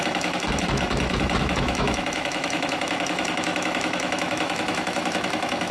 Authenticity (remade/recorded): remade